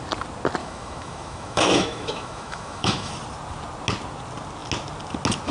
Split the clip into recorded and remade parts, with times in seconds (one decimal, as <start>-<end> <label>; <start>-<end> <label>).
0.0-0.6 recorded; 0.6-3.1 remade; 3.1-5.5 recorded